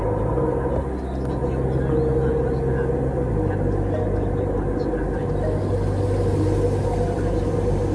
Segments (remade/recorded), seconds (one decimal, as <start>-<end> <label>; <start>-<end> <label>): 0.0-7.9 recorded